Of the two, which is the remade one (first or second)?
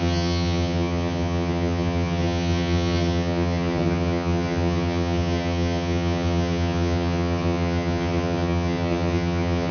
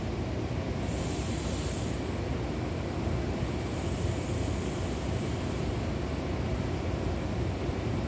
first